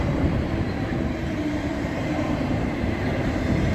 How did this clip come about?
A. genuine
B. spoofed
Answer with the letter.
B